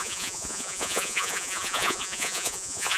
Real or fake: fake